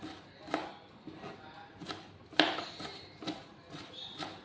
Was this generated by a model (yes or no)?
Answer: no